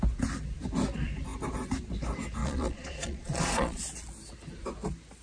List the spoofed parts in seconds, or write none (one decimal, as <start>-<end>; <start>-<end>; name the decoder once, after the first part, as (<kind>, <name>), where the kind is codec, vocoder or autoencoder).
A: 2.4-3.8 (vocoder, Vocos)